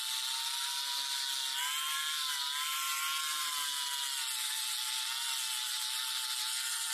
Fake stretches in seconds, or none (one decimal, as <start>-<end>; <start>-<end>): none